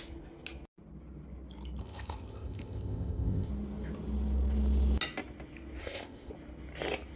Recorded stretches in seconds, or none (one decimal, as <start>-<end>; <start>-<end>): 0.0-1.8; 3.5-5.8; 6.3-7.2